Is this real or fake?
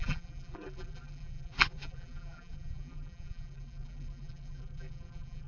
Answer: fake